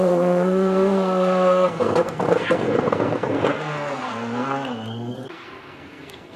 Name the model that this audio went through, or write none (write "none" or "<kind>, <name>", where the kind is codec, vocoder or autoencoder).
codec, SNAC